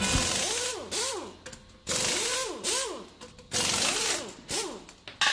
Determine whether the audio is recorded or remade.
recorded